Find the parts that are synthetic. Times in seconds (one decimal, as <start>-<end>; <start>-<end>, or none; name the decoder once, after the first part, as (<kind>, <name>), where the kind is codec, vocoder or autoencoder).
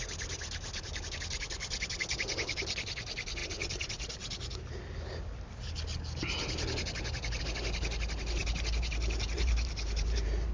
8.4-10.5 (vocoder, BigVGAN v2)